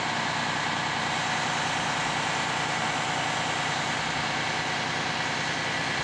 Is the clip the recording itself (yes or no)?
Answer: yes